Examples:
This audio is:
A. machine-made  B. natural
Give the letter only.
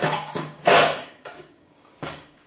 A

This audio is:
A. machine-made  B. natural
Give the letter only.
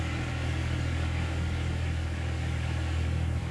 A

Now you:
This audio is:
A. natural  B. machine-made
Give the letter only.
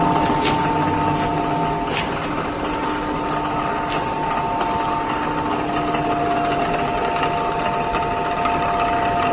A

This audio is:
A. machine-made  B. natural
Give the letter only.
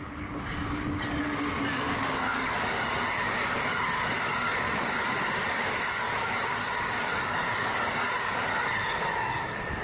A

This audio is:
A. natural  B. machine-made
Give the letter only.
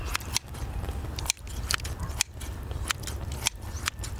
A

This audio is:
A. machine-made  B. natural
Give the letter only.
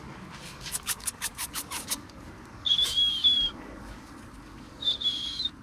A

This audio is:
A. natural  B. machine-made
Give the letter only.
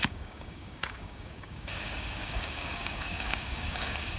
B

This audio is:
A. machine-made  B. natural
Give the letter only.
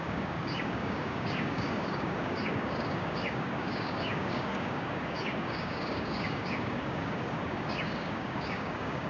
A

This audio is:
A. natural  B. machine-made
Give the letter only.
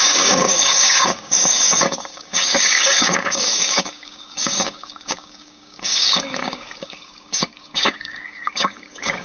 B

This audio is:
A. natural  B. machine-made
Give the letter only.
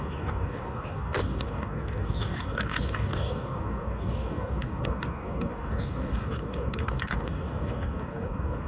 B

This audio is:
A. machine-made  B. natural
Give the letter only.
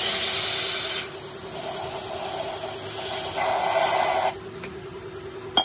B